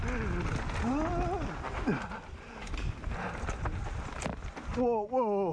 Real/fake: real